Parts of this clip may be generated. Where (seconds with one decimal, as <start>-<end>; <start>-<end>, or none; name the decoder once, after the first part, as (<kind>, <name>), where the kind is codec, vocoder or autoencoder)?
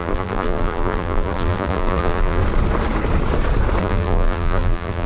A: 0.0-2.4 (vocoder, BigVGAN v2); 3.8-5.1